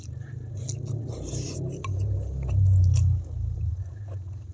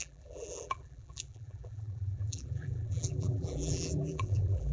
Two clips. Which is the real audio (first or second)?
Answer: first